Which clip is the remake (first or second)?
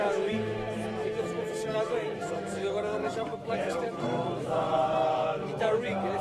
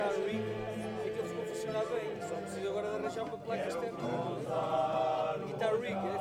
first